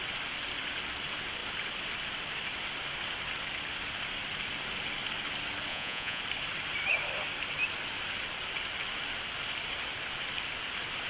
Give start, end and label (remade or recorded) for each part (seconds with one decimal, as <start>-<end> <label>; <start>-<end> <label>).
0.0-5.7 recorded; 5.7-6.2 remade; 6.2-11.1 recorded